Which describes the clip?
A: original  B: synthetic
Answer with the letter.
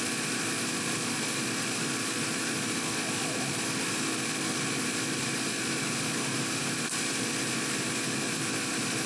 A